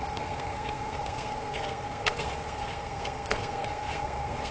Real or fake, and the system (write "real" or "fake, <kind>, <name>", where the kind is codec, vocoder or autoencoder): fake, codec, SNAC